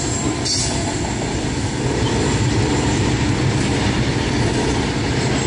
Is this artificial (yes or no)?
no